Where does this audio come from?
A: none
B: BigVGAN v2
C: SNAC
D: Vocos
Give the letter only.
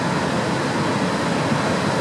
A